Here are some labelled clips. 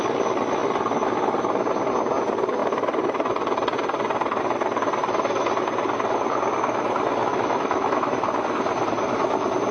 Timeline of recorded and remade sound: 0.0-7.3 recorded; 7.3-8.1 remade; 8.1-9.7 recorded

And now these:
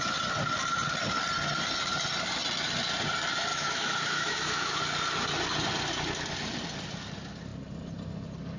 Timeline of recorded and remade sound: 0.0-3.5 recorded; 3.5-4.8 remade; 4.8-8.6 recorded

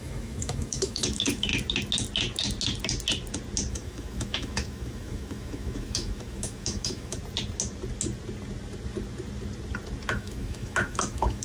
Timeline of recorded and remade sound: 0.0-1.5 remade; 1.5-3.7 recorded; 3.7-7.2 remade; 7.2-10.1 recorded; 10.1-11.4 remade